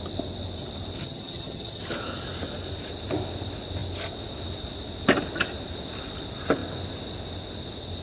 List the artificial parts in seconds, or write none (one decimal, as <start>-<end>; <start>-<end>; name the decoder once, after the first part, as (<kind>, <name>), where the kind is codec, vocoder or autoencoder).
1.0-1.8 (vocoder, HiFi-GAN)